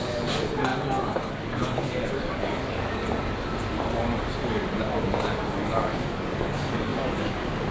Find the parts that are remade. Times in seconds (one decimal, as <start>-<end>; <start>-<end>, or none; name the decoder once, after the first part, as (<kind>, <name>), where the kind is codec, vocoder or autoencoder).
0.0-3.0 (codec, DAC); 5.4-7.7

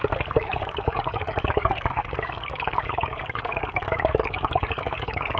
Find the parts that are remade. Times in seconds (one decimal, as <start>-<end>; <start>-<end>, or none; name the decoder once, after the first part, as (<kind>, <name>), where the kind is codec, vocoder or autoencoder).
0.0-5.4 (codec, DAC)

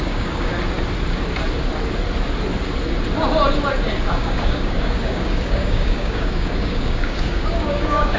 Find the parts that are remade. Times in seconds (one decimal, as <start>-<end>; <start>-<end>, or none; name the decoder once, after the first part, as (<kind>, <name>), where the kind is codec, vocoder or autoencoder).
0.0-0.5 (codec, DAC); 4.1-8.2

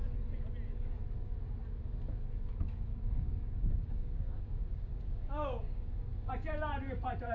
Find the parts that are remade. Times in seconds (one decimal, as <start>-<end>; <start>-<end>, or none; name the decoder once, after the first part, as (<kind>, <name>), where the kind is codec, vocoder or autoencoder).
2.9-6.3 (codec, DAC)

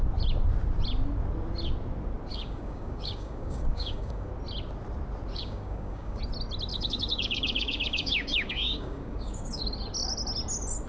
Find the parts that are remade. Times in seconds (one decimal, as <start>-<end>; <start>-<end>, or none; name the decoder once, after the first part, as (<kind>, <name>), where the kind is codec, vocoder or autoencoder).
2.3-4.3 (codec, DAC); 5.3-6.2; 6.7-9.6

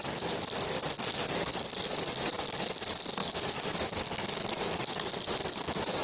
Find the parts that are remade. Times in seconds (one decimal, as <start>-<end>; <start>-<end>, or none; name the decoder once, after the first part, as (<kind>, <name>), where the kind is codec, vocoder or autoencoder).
0.8-6.0 (codec, DAC)